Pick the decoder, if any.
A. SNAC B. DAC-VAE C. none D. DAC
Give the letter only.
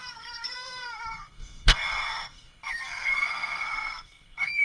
A